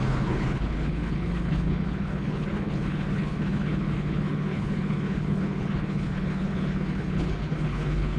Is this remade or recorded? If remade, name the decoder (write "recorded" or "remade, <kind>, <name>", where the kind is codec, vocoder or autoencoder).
remade, codec, HILCodec